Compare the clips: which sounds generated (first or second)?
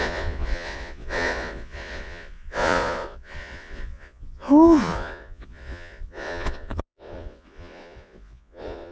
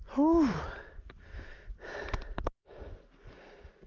first